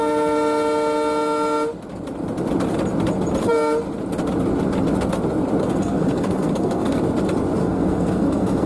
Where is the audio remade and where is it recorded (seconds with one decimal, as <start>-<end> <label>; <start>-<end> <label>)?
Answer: 0.0-5.6 recorded; 5.6-7.0 remade; 7.0-7.6 recorded; 7.6-8.7 remade